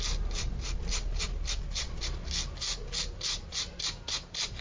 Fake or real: real